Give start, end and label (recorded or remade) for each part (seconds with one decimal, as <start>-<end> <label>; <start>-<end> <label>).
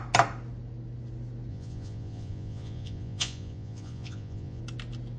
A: 0.0-1.5 recorded; 1.5-4.6 remade; 4.6-5.2 recorded